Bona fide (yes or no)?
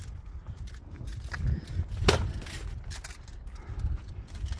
yes